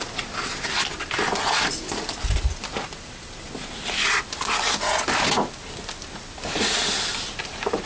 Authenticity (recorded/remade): recorded